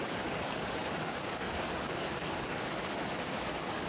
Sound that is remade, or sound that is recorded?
remade